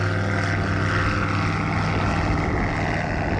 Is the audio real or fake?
real